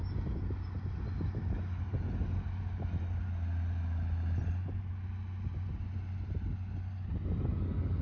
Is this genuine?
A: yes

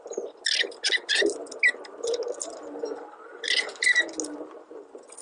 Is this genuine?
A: yes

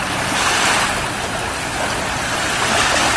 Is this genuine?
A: yes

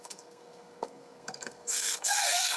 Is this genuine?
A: no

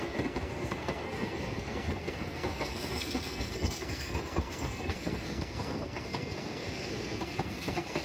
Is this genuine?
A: no